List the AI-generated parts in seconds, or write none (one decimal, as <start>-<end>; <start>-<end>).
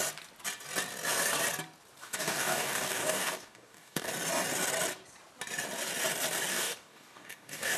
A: 2.0-4.1; 6.5-7.8